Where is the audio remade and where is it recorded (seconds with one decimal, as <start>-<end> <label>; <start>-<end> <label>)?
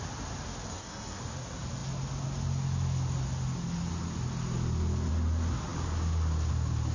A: 0.0-0.7 recorded; 0.7-1.2 remade; 1.2-6.9 recorded